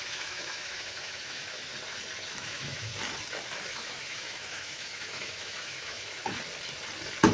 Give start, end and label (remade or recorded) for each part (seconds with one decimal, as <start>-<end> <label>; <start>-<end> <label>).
0.0-1.7 remade; 1.7-2.3 recorded; 2.3-2.9 remade; 2.9-3.7 recorded; 3.7-6.2 remade; 6.2-7.3 recorded